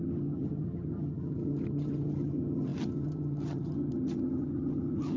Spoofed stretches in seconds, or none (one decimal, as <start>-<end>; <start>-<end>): 0.0-5.2